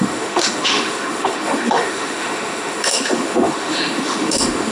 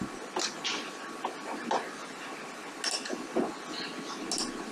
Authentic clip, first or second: second